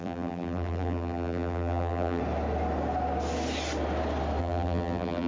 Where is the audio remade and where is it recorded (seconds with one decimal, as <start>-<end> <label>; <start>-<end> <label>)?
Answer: 0.0-2.2 remade; 2.2-4.4 recorded; 4.4-5.3 remade

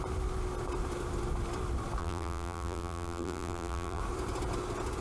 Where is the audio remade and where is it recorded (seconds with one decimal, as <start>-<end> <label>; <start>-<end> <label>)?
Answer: 0.0-2.0 recorded; 2.0-4.0 remade; 4.0-5.0 recorded

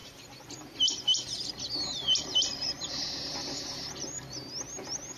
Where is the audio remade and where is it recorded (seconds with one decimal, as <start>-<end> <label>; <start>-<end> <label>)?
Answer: 0.0-1.5 remade; 1.5-2.5 recorded; 2.5-4.3 remade; 4.3-5.2 recorded